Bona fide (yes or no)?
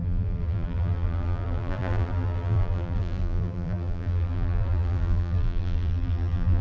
no